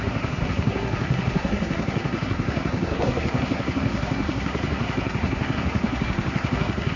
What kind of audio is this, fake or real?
fake